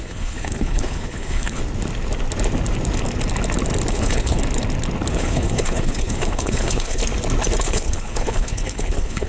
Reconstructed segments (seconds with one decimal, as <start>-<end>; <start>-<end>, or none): 0.0-1.6; 3.9-4.4; 5.1-7.0; 7.6-9.3